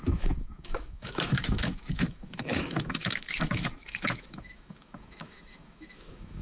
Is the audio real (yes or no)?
no